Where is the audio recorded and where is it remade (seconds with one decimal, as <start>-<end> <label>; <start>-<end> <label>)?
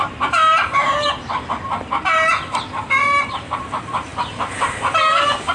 0.0-3.3 recorded; 3.3-5.5 remade